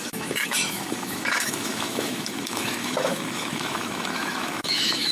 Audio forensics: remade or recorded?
remade